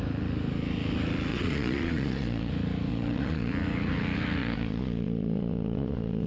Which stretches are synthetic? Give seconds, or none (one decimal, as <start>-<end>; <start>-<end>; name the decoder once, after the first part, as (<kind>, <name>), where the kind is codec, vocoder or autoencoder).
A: 1.3-2.5 (vocoder, Vocos); 2.9-3.5; 4.4-6.3